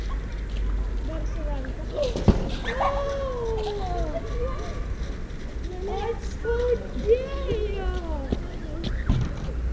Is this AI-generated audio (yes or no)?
no